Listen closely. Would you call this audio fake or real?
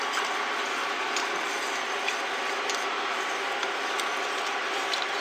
real